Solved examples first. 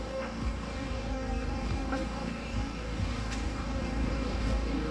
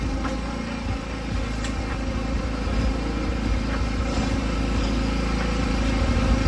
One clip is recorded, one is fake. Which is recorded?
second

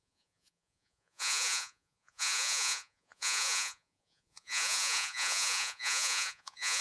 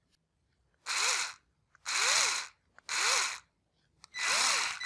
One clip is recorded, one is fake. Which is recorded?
second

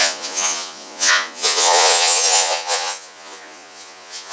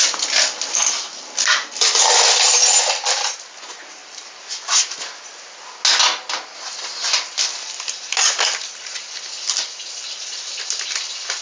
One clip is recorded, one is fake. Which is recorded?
second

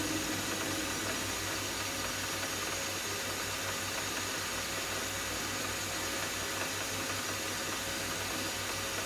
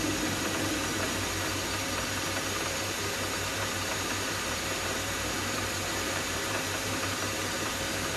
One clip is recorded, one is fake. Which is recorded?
first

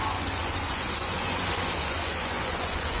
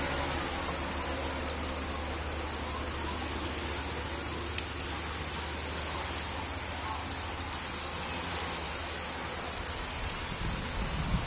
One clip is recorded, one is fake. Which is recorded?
second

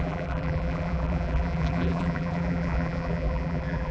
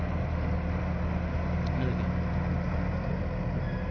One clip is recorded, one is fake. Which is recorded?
second